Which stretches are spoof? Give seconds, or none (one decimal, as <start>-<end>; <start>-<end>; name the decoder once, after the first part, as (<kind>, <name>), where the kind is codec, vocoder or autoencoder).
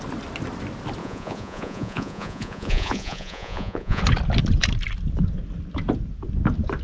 1.0-4.0 (vocoder, Vocos)